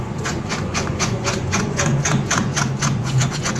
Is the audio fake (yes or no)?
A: yes